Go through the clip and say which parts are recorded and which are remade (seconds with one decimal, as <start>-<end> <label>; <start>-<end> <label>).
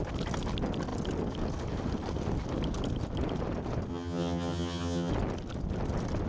0.0-3.9 recorded; 3.9-5.1 remade; 5.1-6.3 recorded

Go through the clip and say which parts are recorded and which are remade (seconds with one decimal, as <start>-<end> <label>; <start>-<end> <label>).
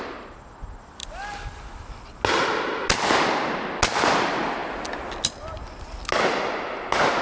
0.0-7.2 recorded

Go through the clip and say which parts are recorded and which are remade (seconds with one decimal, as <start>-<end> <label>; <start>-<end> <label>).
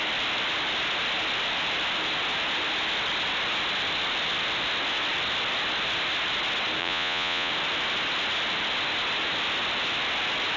0.0-6.8 recorded; 6.8-7.5 remade; 7.5-10.6 recorded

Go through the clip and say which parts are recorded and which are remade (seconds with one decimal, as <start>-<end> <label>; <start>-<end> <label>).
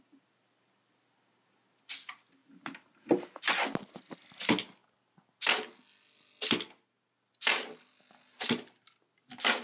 0.0-9.6 recorded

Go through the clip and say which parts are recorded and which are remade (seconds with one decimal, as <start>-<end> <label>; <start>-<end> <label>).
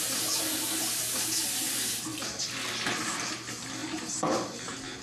0.0-2.1 recorded; 2.1-2.7 remade; 2.7-3.8 recorded; 3.8-4.6 remade; 4.6-5.0 recorded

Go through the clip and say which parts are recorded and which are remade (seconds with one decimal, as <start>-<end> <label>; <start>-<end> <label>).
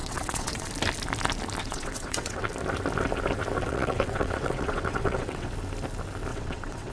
0.0-0.7 remade; 0.7-1.6 recorded; 1.6-2.5 remade; 2.5-3.6 recorded; 3.6-5.5 remade; 5.5-6.3 recorded; 6.3-6.9 remade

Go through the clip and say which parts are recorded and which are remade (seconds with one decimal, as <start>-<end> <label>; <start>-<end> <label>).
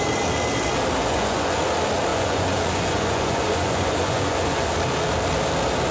0.0-1.0 recorded; 1.0-1.6 remade; 1.6-2.1 recorded; 2.1-4.7 remade; 4.7-5.9 recorded